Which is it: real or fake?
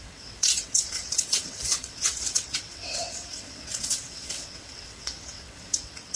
fake